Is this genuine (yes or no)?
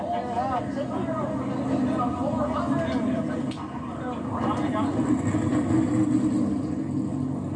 yes